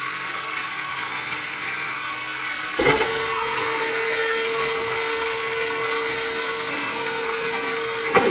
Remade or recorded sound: remade